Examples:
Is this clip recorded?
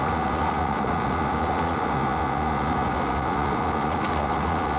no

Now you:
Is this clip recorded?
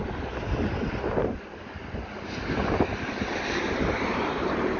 yes